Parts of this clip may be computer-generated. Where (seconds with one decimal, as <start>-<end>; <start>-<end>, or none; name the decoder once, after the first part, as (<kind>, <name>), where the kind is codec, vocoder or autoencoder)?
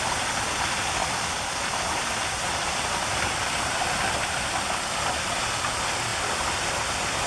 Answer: none